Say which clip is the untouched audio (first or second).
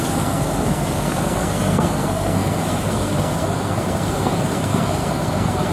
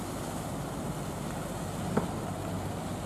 second